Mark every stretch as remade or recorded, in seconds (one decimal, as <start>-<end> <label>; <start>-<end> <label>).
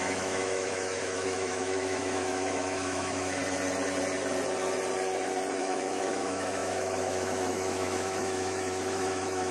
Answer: 0.0-3.4 remade; 3.4-5.6 recorded; 5.6-9.5 remade